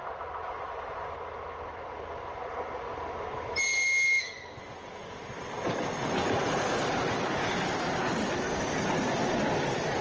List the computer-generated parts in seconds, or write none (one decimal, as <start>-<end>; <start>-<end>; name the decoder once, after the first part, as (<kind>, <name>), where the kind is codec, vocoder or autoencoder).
0.0-1.1 (vocoder, BigVGAN v2)